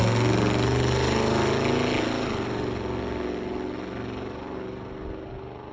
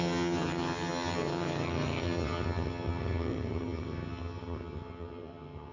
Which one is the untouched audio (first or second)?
first